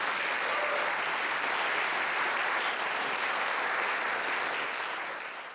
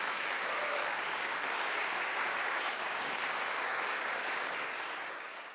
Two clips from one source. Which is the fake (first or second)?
second